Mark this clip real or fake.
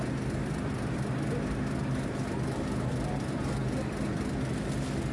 real